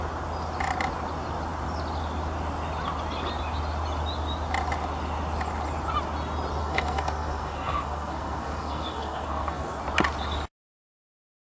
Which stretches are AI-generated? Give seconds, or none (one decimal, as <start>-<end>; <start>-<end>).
6.6-9.8